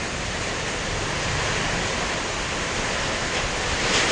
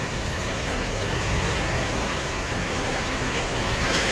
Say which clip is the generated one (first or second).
second